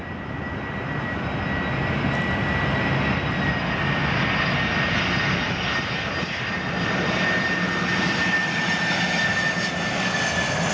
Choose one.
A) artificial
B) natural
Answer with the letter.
B